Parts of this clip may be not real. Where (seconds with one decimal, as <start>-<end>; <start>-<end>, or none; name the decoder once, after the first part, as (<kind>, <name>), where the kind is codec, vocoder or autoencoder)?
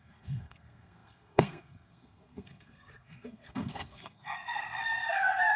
0.0-5.6 (codec, SNAC)